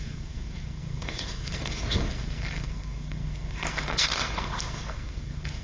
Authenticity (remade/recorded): remade